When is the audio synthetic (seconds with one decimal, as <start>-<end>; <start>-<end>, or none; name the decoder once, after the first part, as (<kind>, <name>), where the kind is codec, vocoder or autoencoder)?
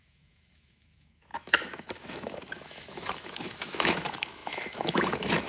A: 0.0-5.5 (autoencoder, DAC-VAE)